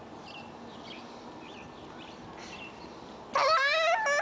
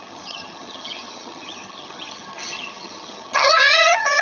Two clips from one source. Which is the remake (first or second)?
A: second